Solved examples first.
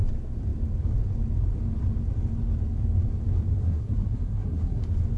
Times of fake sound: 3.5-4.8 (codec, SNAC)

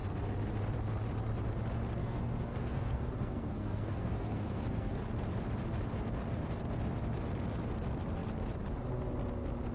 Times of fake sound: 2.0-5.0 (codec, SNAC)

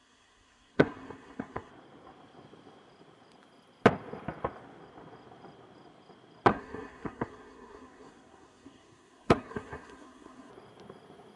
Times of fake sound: 0.0-1.7 (codec, SNAC); 6.5-10.5

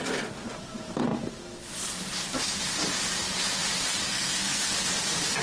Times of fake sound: 4.1-4.7 (codec, SNAC)